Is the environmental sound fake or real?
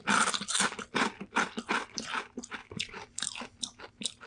fake